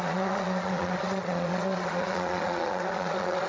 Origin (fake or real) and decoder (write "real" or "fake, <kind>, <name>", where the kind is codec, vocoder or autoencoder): fake, vocoder, Vocos